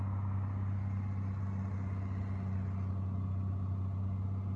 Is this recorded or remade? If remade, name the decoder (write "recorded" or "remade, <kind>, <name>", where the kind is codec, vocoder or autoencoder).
recorded